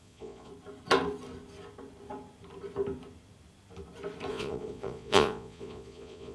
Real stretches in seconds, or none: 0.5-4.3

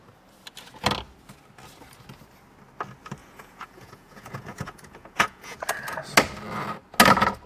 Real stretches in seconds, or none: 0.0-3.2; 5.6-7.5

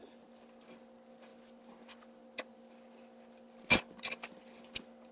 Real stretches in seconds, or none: 0.0-5.1

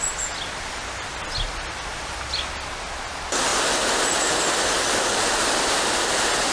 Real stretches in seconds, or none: 0.0-6.5

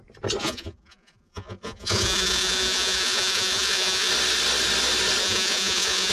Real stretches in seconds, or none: 0.0-0.4; 4.1-5.2

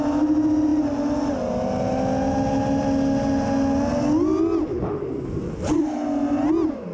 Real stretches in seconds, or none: 0.0-6.9

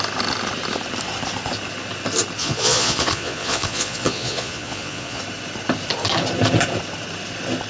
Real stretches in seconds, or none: 0.0-2.4; 5.2-7.7

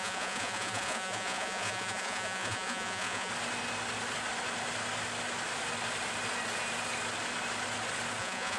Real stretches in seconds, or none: 3.3-8.2